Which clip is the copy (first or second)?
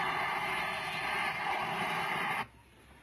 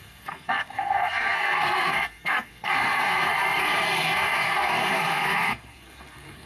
second